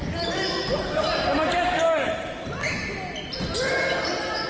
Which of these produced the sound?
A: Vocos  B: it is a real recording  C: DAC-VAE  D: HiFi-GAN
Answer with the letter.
B